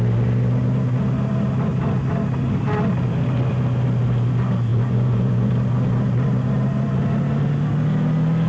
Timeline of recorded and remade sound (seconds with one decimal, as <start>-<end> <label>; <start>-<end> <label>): 0.0-4.7 recorded; 4.7-5.5 remade; 5.5-8.5 recorded